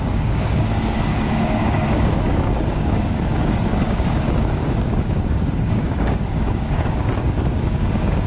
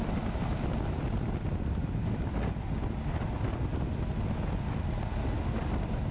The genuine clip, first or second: second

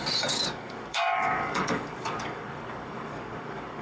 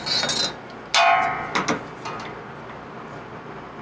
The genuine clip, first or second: second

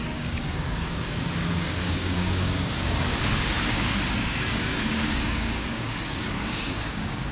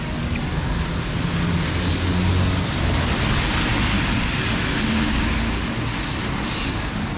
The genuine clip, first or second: second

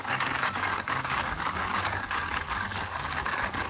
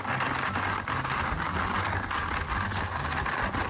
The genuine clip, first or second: second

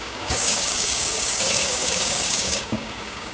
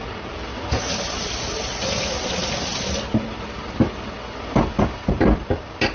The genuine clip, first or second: second